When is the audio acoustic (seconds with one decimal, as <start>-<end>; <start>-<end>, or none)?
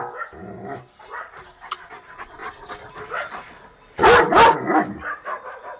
0.0-5.8